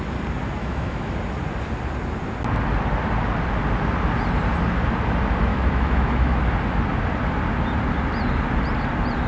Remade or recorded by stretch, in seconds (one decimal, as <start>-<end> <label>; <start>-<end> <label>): 0.0-0.6 recorded; 0.6-1.1 remade; 1.1-5.5 recorded; 5.5-6.4 remade; 6.4-9.3 recorded